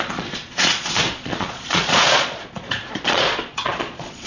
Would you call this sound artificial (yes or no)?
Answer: yes